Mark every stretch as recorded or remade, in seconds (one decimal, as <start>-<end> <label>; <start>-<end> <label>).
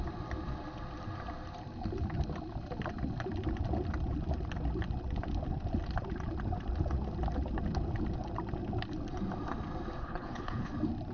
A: 0.0-10.0 recorded; 10.0-10.7 remade; 10.7-11.1 recorded